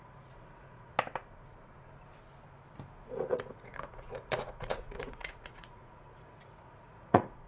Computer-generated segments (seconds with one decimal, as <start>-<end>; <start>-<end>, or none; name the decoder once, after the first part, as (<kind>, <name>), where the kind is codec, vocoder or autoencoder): 0.0-0.9 (vocoder, Vocos); 3.0-7.5